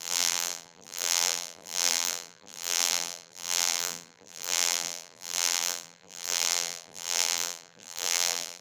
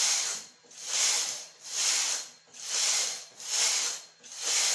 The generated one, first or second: first